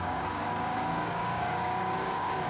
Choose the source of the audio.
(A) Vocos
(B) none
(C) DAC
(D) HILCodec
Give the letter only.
C